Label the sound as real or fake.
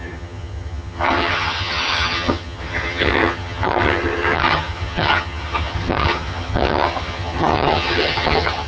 fake